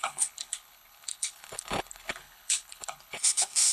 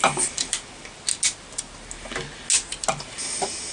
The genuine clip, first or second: second